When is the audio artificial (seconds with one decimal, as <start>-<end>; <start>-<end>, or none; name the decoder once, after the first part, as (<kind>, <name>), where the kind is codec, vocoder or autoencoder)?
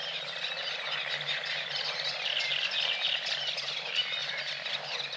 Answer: none